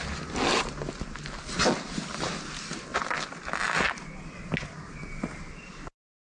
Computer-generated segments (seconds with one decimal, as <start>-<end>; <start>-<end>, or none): none